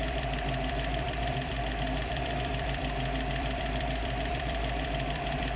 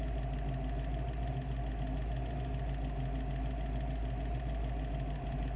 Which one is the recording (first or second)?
second